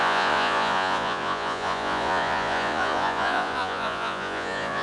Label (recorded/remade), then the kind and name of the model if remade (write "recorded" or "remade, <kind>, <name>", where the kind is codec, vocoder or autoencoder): remade, vocoder, Vocos